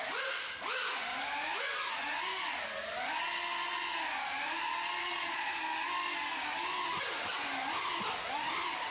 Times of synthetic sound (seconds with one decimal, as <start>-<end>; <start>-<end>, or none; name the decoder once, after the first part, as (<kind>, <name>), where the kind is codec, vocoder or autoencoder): 5.0-5.6 (vocoder, Vocos)